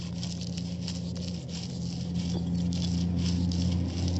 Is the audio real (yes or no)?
yes